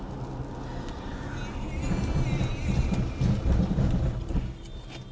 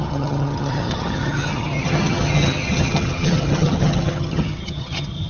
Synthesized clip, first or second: second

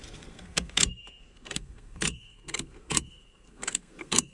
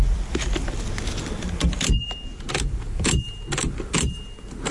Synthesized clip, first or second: first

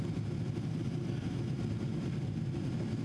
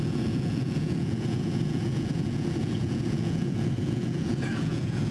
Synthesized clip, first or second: second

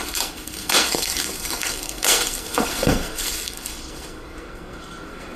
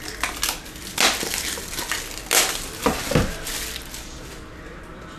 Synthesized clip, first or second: first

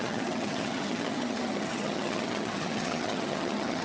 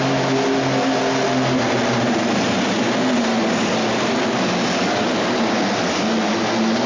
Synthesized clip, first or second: first